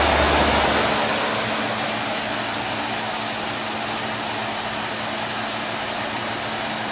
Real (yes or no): yes